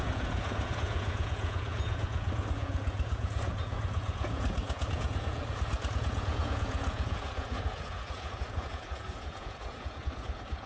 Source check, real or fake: fake